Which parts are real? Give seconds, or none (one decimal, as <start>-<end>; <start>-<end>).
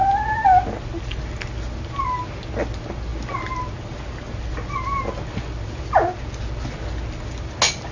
0.0-7.9